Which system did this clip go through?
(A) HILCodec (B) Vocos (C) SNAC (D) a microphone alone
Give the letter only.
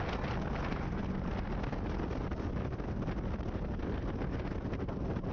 D